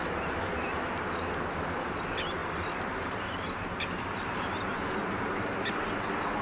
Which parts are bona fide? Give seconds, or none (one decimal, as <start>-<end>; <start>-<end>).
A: 0.9-2.4; 3.7-4.7; 5.3-6.4